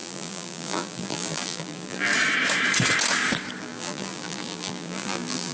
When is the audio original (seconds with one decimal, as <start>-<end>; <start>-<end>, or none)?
2.1-3.6